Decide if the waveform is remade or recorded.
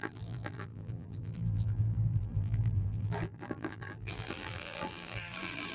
remade